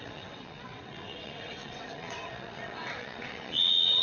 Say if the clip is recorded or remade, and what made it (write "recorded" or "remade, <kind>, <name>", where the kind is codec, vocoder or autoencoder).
remade, vocoder, WaveNeXt